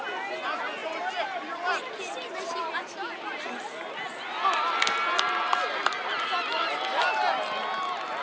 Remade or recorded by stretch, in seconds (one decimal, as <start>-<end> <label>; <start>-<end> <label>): 0.0-8.2 recorded